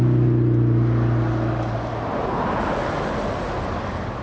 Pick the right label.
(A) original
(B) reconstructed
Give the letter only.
A